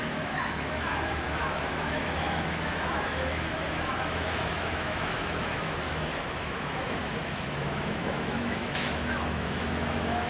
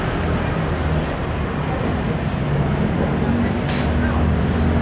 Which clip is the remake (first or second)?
first